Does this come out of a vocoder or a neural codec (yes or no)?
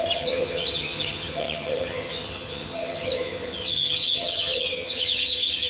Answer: yes